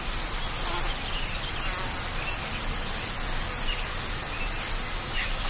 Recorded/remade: recorded